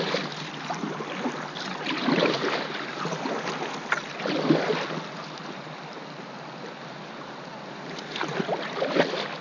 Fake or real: real